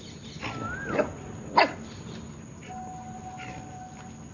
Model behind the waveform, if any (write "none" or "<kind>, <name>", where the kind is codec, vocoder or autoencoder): none